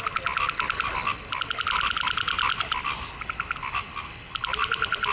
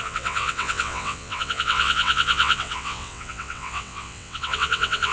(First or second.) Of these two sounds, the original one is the first